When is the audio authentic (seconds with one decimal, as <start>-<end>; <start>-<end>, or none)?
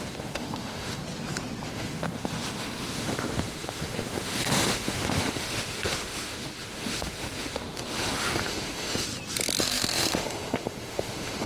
1.0-1.7; 9.1-9.6